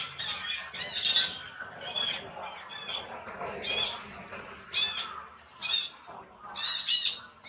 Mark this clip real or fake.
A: real